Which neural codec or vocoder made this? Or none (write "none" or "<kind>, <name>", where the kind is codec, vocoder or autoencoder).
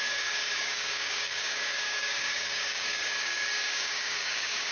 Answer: codec, DAC